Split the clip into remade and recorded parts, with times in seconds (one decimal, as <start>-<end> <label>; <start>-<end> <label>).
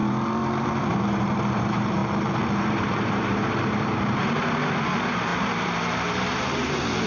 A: 0.0-2.0 remade; 2.0-2.7 recorded; 2.7-7.1 remade